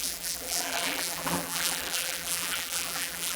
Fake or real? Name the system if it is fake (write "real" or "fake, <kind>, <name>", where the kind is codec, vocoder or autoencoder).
fake, vocoder, BigVGAN v2